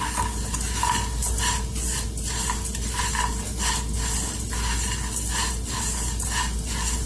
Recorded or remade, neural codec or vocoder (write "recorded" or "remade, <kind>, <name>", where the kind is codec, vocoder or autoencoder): recorded